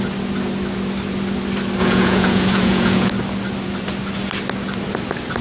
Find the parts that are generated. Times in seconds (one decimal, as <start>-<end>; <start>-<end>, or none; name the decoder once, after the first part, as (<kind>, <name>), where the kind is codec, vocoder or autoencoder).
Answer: 1.8-3.1 (vocoder, Vocos)